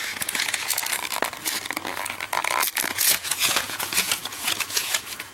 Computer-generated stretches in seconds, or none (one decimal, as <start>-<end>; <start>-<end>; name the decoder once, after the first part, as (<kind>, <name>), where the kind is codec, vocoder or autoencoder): 0.0-0.8 (vocoder, Vocos); 2.9-5.3